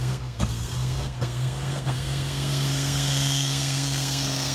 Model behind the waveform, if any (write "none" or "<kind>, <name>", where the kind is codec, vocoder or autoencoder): codec, SNAC